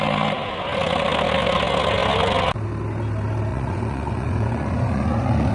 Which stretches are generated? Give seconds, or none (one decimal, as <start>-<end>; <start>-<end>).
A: 3.5-5.5